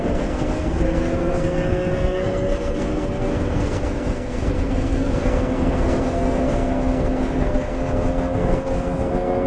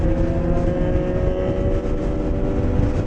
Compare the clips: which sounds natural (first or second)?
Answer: second